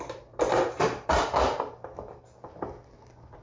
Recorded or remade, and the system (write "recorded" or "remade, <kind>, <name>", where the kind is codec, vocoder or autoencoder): recorded